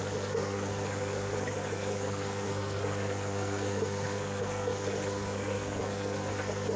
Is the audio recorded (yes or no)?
no